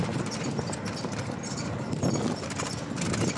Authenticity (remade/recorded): recorded